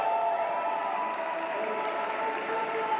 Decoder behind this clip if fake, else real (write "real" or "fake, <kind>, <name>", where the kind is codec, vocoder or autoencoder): real